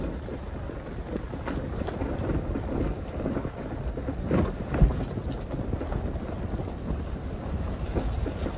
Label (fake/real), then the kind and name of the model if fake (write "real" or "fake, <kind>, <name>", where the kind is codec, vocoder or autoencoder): real